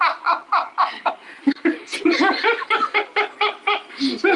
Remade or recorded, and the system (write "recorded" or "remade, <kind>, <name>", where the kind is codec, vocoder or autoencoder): recorded